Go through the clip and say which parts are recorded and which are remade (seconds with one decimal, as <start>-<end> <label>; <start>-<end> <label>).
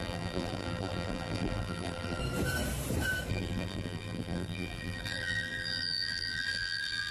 0.0-2.2 remade; 2.2-3.3 recorded; 3.3-7.1 remade